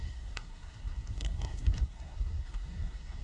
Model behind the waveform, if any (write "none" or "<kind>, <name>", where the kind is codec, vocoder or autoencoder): codec, SNAC